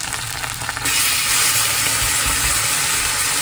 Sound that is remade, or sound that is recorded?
recorded